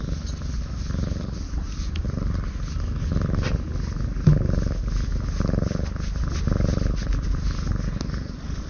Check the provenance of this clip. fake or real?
real